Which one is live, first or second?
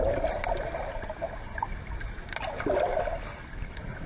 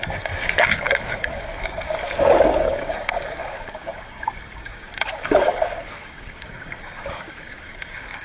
first